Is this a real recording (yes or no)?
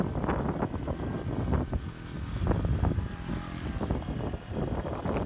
yes